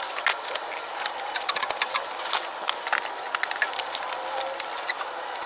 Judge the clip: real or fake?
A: real